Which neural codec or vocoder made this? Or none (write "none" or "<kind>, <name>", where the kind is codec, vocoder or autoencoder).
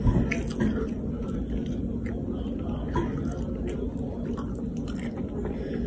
none